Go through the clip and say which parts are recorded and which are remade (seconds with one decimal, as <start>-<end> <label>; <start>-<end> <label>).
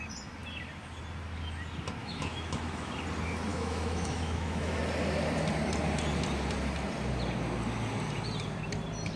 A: 0.0-2.0 recorded; 2.0-2.9 remade; 2.9-3.5 recorded; 3.5-4.8 remade; 4.8-9.2 recorded